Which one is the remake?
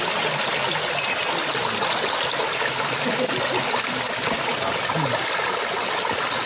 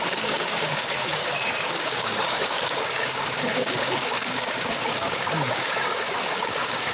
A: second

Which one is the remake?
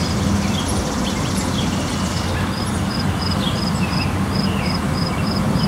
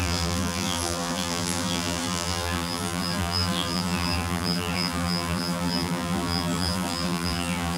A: second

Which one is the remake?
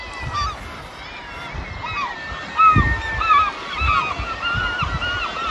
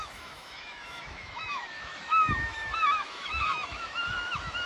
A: second